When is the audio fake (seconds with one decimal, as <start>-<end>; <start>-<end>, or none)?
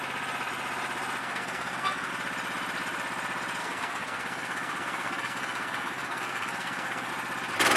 1.2-2.1; 3.6-7.1